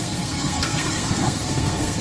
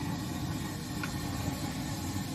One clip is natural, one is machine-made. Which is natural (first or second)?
second